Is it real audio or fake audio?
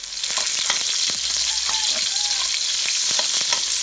real